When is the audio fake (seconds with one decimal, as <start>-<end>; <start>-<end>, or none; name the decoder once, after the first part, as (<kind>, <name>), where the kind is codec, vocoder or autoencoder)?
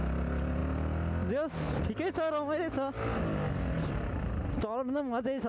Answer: none